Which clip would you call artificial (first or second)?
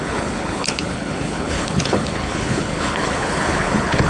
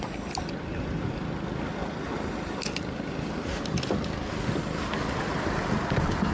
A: first